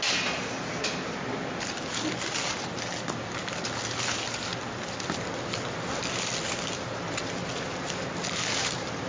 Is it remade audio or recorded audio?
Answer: recorded